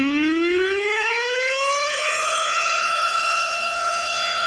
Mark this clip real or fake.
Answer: fake